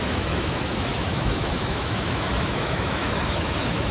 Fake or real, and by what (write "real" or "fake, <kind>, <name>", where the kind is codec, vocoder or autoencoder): fake, autoencoder, DAC-VAE